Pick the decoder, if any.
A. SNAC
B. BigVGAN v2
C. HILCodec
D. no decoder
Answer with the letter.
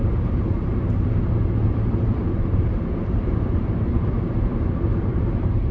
B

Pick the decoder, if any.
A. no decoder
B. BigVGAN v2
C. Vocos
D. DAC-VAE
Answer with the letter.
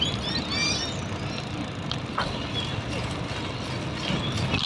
A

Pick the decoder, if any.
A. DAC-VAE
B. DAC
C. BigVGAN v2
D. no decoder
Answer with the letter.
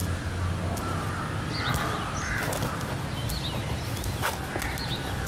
D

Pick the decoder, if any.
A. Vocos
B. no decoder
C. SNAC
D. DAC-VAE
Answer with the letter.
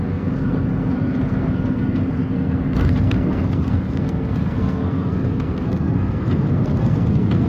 C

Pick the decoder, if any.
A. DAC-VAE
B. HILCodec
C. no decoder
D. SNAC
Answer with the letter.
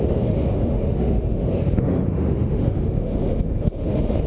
A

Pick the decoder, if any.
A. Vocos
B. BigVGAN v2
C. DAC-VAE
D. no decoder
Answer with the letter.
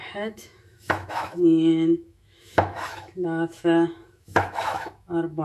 C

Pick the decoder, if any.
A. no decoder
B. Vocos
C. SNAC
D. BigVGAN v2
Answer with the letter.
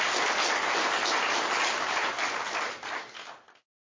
A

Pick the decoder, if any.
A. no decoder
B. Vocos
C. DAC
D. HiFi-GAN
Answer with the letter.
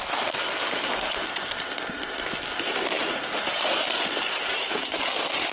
A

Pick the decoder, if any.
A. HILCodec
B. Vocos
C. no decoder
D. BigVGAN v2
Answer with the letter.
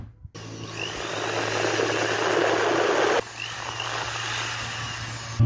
C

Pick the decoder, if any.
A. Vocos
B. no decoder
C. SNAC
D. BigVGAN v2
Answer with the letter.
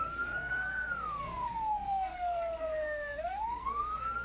C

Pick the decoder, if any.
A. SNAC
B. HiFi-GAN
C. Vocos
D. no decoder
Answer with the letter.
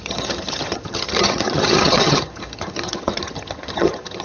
B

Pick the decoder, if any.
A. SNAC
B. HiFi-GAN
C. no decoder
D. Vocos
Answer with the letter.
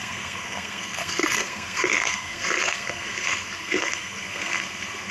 A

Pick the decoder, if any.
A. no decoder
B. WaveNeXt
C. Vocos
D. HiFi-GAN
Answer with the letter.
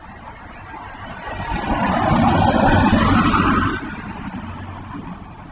A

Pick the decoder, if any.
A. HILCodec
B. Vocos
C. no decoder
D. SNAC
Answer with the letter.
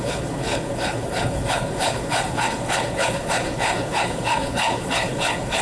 A